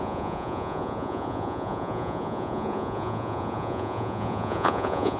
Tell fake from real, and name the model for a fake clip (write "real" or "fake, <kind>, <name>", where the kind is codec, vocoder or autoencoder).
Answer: fake, vocoder, Vocos